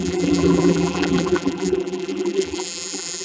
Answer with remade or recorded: remade